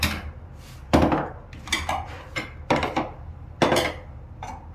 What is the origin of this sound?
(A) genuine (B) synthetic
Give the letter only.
A